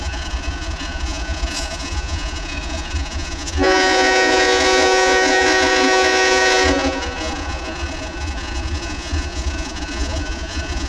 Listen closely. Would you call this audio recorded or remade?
remade